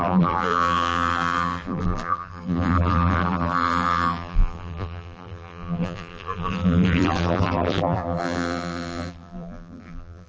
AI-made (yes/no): yes